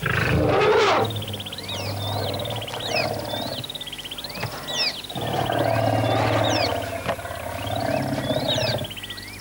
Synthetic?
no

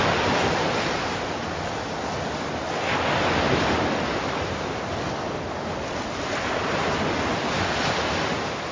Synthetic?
no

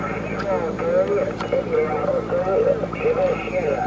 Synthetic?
no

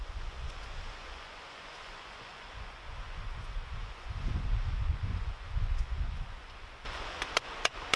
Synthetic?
yes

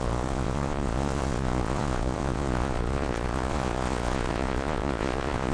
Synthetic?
yes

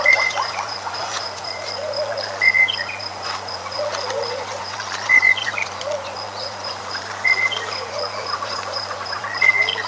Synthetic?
yes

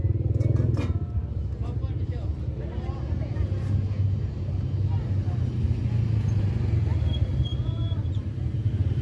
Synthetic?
no